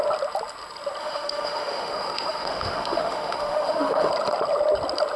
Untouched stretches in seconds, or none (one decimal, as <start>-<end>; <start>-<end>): 0.0-1.0; 4.1-5.2